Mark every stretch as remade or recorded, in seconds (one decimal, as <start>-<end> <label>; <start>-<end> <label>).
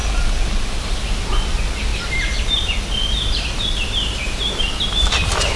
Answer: 0.0-0.8 remade; 0.8-1.9 recorded; 1.9-5.6 remade